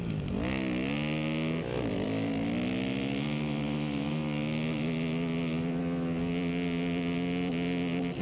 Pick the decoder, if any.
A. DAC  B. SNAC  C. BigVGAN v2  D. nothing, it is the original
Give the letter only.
D